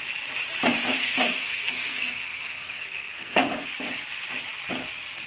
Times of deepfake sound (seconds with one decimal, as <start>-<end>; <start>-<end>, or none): 1.0-3.7